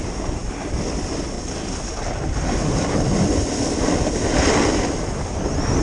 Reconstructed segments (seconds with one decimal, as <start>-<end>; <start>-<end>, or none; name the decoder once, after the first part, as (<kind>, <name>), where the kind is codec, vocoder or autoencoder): none